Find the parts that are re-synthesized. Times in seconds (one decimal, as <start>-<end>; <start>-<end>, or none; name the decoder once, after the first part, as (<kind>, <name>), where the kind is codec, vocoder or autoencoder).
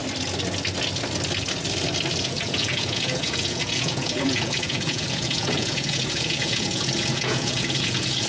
2.2-8.3 (vocoder, Vocos)